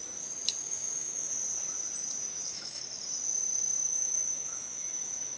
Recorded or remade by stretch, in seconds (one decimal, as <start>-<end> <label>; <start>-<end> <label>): 0.0-0.6 recorded; 0.6-1.3 remade; 1.3-2.3 recorded; 2.3-2.8 remade; 2.8-3.9 recorded; 3.9-5.4 remade